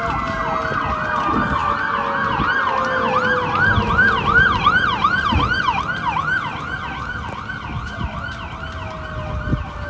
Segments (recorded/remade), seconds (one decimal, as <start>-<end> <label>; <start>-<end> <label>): 0.0-9.9 recorded